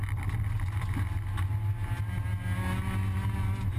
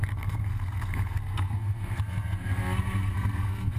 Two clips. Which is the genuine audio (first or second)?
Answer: first